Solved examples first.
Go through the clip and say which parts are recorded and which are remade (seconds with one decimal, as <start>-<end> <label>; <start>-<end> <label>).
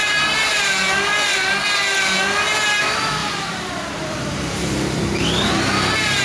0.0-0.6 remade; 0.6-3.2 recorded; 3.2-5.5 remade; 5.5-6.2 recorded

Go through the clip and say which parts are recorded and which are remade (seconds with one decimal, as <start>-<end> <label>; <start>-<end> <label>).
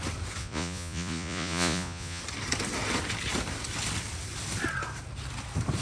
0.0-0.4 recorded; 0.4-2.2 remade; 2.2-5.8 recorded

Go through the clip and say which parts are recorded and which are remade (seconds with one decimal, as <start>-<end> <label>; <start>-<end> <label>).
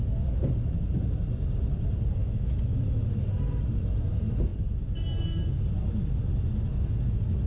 0.0-2.2 recorded; 2.2-3.2 remade; 3.2-7.5 recorded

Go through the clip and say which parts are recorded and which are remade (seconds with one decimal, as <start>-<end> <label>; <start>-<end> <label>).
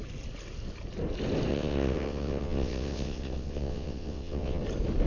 0.0-1.5 recorded; 1.5-4.6 remade; 4.6-5.1 recorded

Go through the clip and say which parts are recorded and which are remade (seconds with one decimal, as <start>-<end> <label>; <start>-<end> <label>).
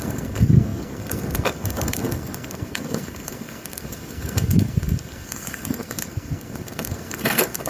0.0-7.7 remade